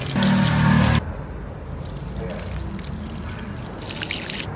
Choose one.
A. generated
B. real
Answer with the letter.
B